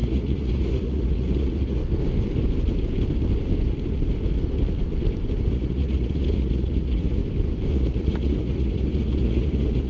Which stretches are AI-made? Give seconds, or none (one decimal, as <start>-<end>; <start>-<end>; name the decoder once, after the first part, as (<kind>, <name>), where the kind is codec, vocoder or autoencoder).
0.0-1.8 (vocoder, Vocos); 5.5-7.2; 7.7-9.9